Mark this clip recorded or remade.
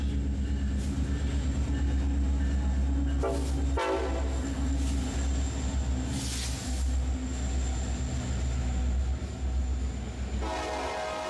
recorded